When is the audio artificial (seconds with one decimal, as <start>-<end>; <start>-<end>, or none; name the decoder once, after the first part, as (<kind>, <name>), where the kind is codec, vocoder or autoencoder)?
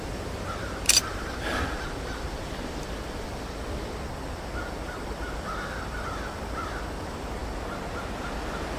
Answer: 0.0-7.4 (vocoder, BigVGAN v2)